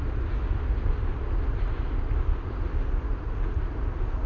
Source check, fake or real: real